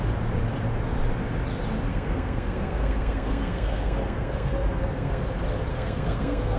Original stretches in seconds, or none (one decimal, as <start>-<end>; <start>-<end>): 0.0-1.9; 5.2-5.7